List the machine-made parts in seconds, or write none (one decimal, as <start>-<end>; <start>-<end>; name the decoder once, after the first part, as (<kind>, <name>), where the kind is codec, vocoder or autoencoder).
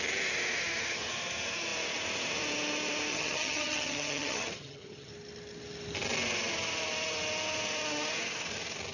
3.1-5.1 (vocoder, HiFi-GAN)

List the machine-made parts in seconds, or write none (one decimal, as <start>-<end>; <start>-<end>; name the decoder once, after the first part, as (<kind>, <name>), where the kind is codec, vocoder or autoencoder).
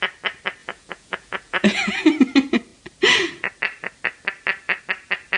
0.6-2.1 (vocoder, Vocos)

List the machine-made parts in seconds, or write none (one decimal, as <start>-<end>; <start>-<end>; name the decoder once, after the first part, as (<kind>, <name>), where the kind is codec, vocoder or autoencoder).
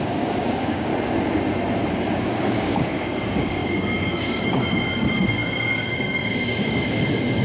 0.0-0.9 (codec, DAC); 1.9-7.4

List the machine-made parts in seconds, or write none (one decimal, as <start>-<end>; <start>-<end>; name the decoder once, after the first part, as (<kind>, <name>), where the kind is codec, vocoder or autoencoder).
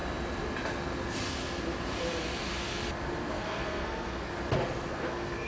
3.3-4.3 (codec, SNAC); 4.9-5.5